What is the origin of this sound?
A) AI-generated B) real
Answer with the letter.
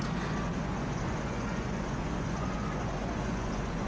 A